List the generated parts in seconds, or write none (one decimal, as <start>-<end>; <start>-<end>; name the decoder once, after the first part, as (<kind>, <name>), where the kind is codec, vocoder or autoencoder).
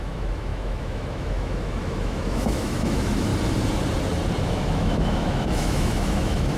0.0-3.3 (autoencoder, DAC-VAE); 4.4-6.6